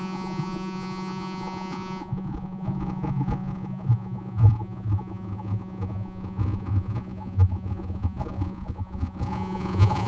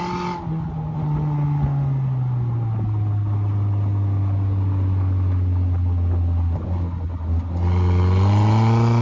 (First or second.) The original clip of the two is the second